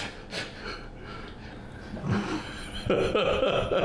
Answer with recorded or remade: recorded